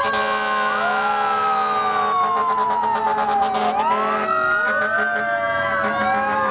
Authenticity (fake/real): real